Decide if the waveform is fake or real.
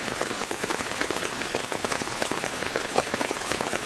fake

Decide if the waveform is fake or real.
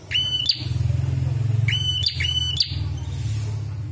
real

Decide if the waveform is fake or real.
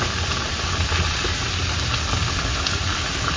real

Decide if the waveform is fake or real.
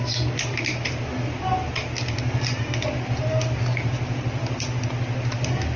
real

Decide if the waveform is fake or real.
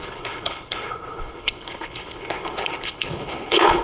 fake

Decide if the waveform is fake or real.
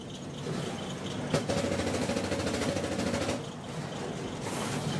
real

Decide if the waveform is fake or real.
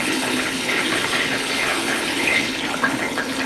fake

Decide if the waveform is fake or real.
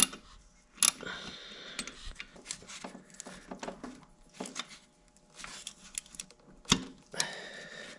real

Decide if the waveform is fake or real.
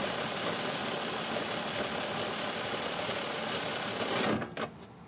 real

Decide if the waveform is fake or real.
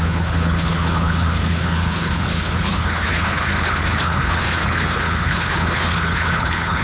fake